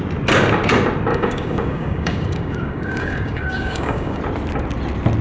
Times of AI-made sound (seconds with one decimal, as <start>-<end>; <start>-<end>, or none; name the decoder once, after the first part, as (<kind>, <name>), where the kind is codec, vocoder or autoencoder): 1.1-4.2 (codec, DAC)